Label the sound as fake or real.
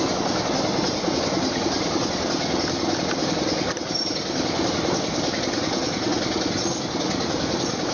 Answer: real